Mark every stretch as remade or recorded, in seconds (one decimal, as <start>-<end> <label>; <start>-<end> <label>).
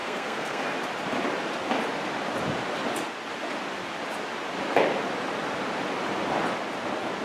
0.0-0.6 remade; 0.6-7.2 recorded